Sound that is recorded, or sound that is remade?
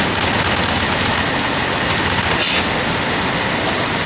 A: recorded